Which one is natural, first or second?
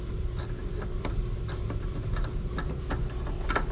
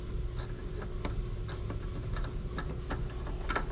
second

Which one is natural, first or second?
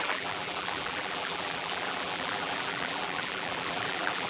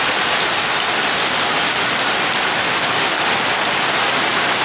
second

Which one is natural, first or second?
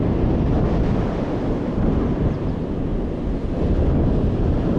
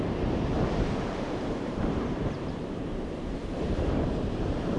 first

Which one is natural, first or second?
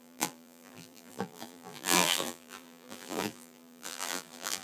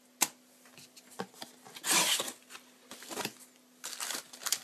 second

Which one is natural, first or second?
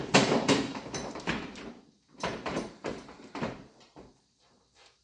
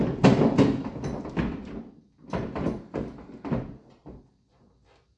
second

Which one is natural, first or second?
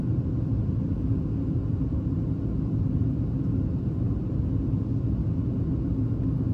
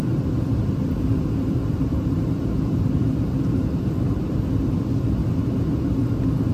first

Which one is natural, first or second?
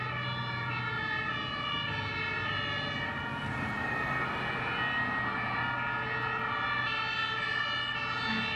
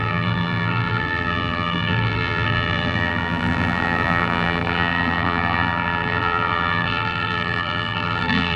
first